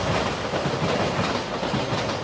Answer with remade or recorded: recorded